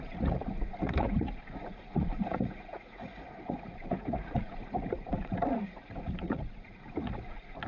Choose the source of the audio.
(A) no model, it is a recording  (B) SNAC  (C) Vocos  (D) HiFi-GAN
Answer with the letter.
C